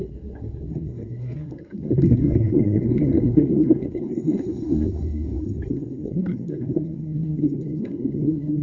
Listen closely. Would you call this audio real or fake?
fake